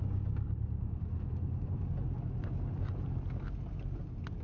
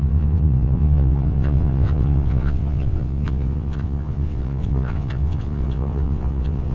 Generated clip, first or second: second